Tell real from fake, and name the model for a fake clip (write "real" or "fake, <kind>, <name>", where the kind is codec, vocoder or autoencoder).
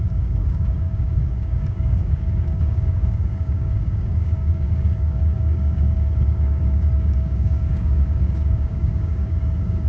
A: fake, codec, DAC